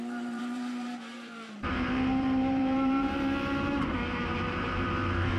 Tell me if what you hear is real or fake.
fake